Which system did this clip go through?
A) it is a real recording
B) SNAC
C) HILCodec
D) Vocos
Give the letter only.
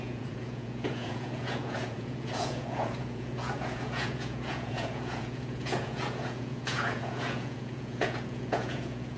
D